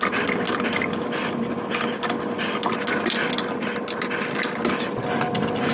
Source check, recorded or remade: recorded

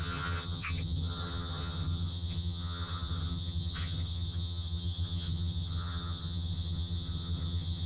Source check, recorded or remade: remade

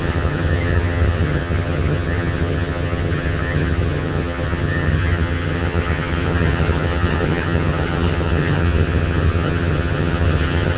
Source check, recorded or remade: remade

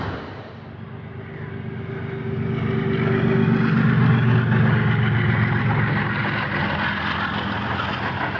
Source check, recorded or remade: recorded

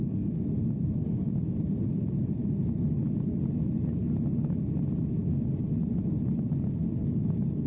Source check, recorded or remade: recorded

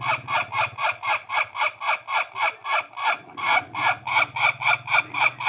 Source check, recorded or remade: recorded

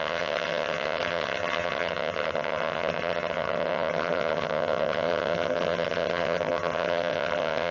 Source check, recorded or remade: remade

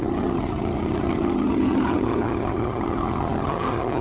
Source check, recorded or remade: remade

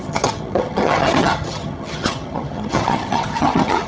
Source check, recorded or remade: remade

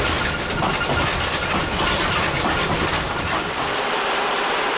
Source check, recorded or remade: recorded